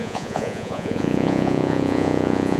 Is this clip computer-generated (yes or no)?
yes